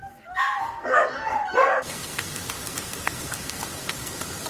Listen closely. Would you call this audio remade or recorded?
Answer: remade